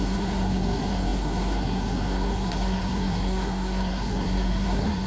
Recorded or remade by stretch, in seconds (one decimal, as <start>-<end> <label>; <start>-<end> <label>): 0.0-5.1 remade